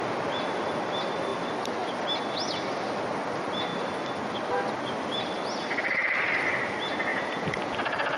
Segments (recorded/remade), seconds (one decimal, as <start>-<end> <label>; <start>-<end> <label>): 0.0-7.1 recorded; 7.1-7.7 remade; 7.7-8.2 recorded